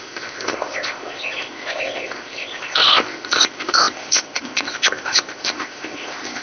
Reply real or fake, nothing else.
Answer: fake